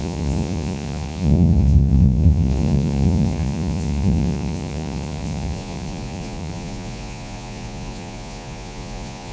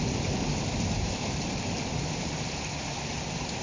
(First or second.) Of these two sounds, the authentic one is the second